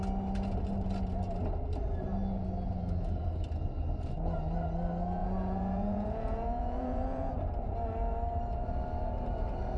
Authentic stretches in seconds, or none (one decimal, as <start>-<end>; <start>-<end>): 0.0-5.2; 7.3-9.8